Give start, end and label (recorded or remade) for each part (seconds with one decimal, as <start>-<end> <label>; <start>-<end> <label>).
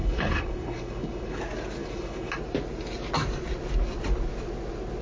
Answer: 0.0-1.4 remade; 1.4-1.8 recorded; 1.8-2.3 remade; 2.3-5.0 recorded